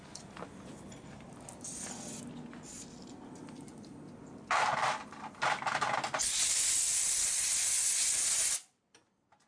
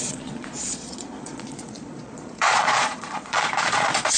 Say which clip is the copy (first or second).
second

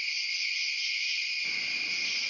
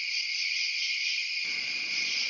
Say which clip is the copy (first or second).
second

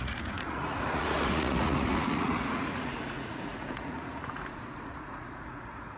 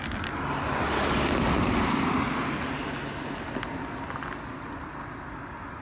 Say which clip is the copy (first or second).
first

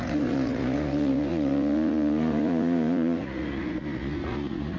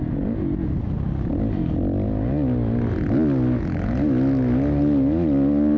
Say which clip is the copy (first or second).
first